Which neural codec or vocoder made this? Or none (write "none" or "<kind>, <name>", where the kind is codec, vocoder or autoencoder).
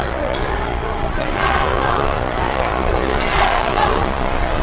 vocoder, Vocos